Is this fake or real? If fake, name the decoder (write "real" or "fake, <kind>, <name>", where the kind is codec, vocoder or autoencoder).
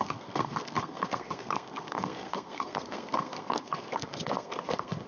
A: fake, codec, SNAC